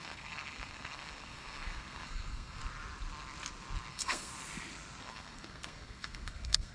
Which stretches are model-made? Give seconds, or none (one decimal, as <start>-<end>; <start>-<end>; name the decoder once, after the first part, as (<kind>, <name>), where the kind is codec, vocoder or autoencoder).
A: 0.0-2.6 (codec, SNAC); 3.9-4.3; 5.0-6.7